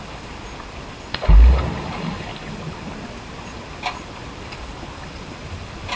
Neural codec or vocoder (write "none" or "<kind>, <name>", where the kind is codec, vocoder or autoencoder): none